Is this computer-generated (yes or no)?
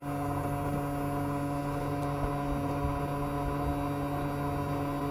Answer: no